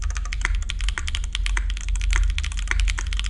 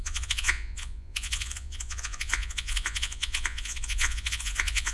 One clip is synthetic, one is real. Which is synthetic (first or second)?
second